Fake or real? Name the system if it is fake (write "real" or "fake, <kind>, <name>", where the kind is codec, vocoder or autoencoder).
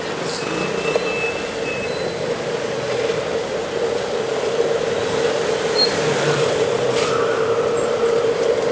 real